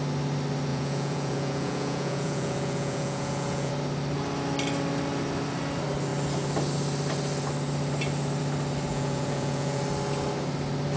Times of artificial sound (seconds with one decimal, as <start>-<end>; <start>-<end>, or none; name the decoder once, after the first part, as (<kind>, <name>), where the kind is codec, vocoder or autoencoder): 0.7-3.7 (vocoder, Vocos); 8.9-9.8